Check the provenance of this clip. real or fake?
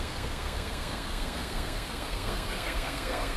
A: fake